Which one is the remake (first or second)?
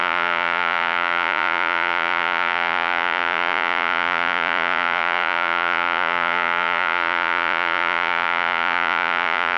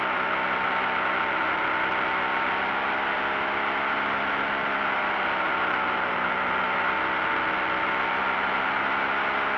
first